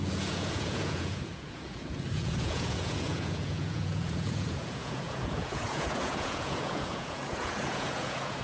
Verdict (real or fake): fake